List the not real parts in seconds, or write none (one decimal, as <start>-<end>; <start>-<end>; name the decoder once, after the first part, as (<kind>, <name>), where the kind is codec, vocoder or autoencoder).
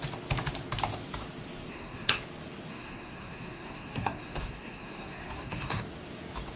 1.7-2.2 (codec, SNAC); 2.7-5.8